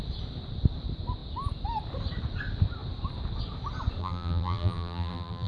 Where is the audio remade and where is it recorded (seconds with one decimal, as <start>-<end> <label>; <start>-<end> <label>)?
0.0-4.0 recorded; 4.0-5.5 remade